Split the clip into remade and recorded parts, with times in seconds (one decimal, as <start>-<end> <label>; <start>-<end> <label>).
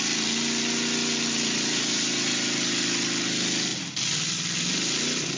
0.0-5.4 recorded